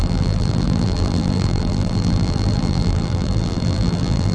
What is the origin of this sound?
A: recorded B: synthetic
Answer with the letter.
B